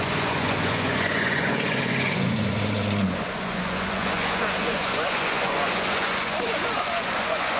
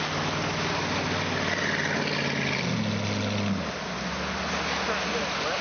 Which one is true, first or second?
second